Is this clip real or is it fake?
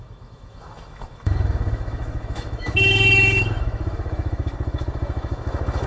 fake